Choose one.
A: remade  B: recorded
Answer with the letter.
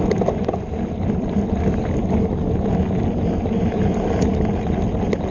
B